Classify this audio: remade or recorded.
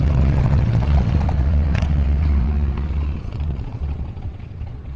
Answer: remade